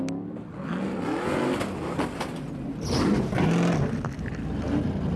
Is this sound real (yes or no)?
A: yes